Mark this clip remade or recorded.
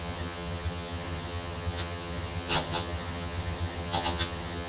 remade